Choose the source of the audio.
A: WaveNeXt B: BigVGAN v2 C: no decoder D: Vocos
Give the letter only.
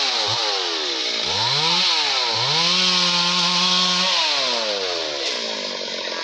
C